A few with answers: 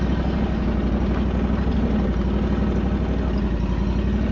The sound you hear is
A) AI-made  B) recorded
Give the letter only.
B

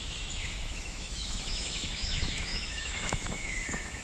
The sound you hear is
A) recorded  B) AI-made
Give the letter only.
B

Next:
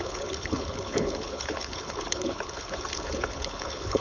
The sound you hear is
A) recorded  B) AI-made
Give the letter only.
B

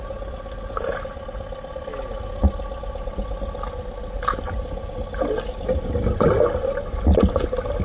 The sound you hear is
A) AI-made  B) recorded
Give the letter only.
B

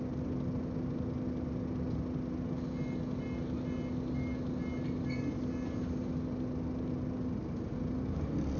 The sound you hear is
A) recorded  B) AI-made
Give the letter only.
A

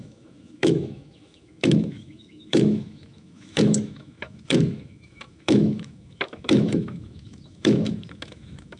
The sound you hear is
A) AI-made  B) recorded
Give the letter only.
A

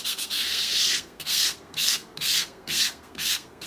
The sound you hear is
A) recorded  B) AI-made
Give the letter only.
B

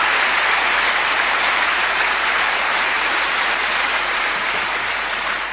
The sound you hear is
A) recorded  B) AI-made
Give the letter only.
B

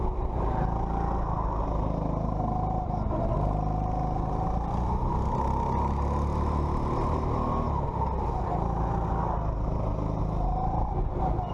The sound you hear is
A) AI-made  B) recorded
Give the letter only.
B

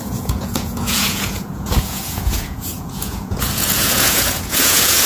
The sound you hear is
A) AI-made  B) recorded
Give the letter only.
A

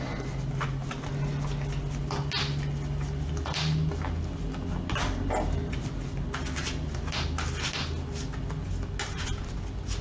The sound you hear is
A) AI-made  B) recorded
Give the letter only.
B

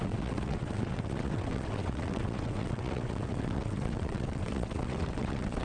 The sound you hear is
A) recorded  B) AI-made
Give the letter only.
B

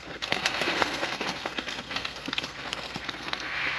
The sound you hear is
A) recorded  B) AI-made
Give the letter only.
B